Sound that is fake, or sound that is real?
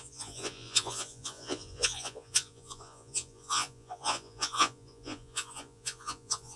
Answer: fake